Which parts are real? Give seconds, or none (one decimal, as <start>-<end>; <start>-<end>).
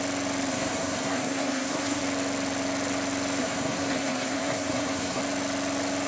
0.0-0.5; 2.0-3.4; 5.2-6.1